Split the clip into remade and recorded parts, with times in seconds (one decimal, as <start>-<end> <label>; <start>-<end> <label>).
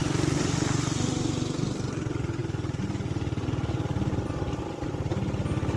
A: 0.0-5.8 recorded